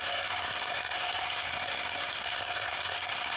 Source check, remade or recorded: remade